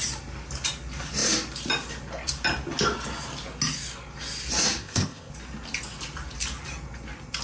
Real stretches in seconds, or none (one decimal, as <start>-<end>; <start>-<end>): 0.0-4.8; 5.3-7.4